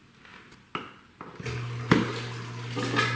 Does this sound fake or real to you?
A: real